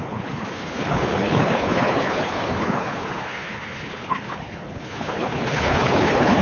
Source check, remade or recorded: remade